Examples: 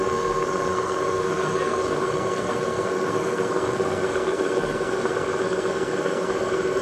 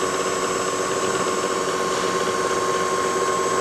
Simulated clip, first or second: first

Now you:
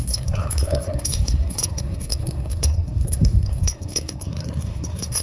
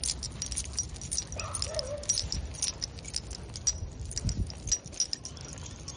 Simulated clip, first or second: first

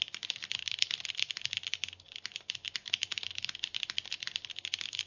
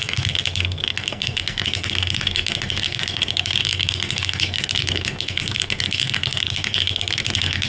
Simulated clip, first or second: second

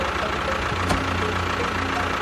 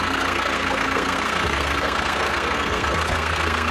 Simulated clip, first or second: second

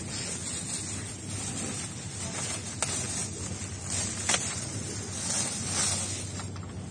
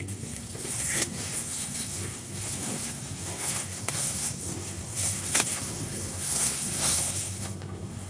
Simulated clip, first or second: second